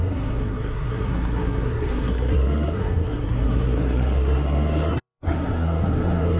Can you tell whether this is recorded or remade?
remade